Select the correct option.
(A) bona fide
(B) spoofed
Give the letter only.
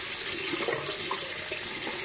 A